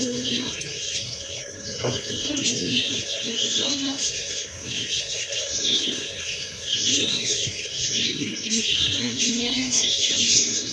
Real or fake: fake